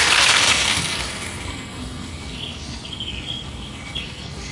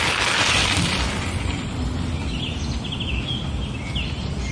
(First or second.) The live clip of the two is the second